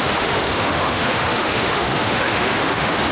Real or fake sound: fake